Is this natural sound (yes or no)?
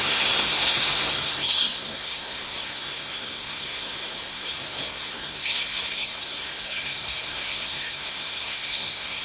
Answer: no